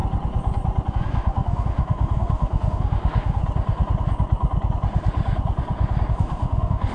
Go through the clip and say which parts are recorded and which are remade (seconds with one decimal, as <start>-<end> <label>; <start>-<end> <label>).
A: 0.0-0.9 recorded; 0.9-3.4 remade; 3.4-6.1 recorded; 6.1-6.9 remade

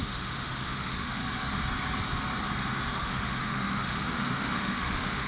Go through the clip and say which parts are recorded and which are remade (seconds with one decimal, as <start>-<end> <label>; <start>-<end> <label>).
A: 0.0-1.2 remade; 1.2-3.0 recorded; 3.0-5.3 remade

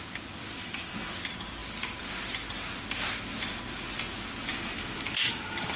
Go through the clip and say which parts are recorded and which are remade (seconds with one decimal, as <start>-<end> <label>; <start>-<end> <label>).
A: 0.0-0.6 recorded; 0.6-1.1 remade; 1.1-4.5 recorded; 4.5-5.8 remade

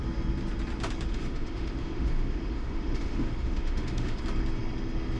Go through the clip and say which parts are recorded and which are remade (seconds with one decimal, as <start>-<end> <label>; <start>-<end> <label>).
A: 0.0-1.1 recorded; 1.1-4.2 remade; 4.2-5.2 recorded